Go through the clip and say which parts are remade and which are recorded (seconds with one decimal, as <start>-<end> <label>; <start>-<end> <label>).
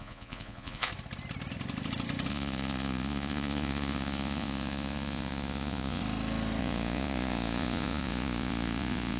0.0-0.9 remade; 0.9-2.3 recorded; 2.3-6.0 remade; 6.0-6.6 recorded; 6.6-9.2 remade